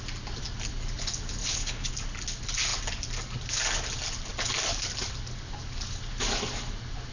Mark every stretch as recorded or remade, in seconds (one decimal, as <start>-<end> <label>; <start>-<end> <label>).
0.0-1.4 recorded; 1.4-1.9 remade; 1.9-7.1 recorded